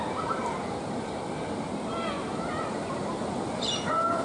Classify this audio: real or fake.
real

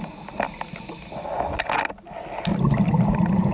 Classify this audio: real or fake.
real